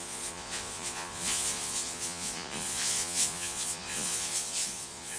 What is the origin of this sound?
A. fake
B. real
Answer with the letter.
A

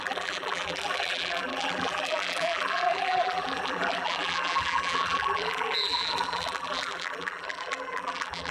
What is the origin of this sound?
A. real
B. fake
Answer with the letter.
B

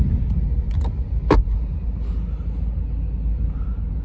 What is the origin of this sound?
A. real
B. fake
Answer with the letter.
A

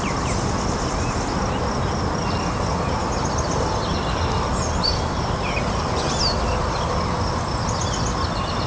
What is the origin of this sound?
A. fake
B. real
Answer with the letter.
B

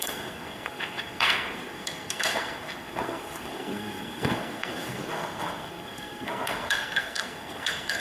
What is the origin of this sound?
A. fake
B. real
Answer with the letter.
A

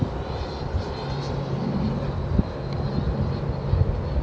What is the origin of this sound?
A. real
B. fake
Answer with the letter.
A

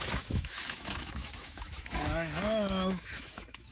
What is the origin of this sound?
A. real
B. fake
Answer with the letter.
B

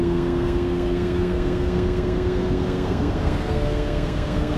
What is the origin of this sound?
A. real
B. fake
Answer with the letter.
B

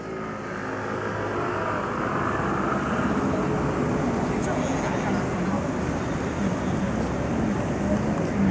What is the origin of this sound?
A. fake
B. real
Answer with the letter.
B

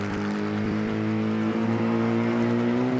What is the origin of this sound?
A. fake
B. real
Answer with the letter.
A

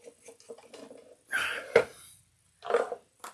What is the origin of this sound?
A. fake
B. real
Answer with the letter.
B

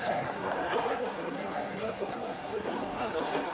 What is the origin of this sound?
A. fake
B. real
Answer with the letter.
A